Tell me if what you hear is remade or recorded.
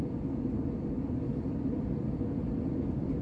recorded